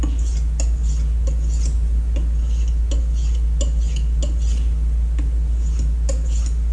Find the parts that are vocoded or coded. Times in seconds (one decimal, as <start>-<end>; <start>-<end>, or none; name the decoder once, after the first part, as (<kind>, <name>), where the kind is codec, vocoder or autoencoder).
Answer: none